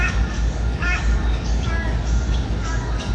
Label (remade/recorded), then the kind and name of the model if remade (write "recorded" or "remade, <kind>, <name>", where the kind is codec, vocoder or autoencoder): remade, codec, DAC